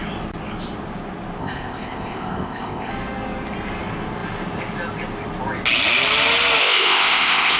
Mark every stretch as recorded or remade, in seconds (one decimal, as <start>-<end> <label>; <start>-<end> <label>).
0.0-1.4 recorded; 1.4-2.9 remade; 2.9-6.6 recorded; 6.6-7.6 remade